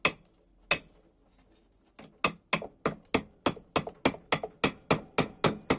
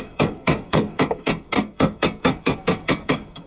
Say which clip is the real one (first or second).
first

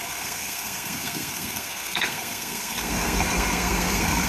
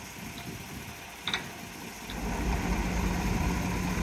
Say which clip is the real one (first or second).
second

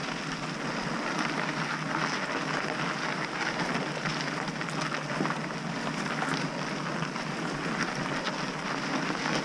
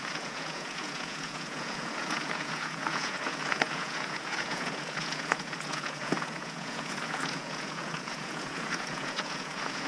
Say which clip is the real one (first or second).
first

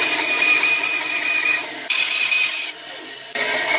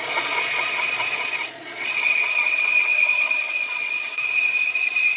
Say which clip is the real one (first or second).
first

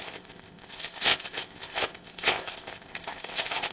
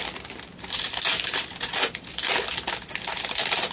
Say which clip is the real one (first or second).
second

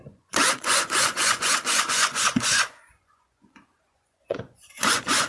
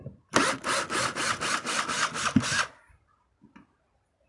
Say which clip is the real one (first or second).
second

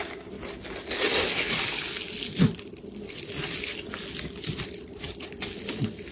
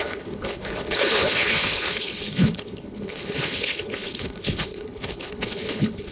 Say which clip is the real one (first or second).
first